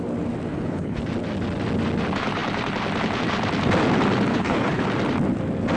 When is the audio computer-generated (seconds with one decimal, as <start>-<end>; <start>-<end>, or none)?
0.5-1.0; 4.3-4.8